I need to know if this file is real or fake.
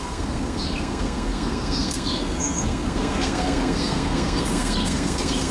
fake